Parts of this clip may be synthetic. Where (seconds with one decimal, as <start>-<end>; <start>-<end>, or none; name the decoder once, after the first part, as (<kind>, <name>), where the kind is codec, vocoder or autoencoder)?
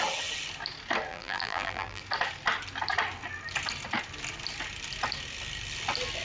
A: 1.1-2.0 (vocoder, BigVGAN v2)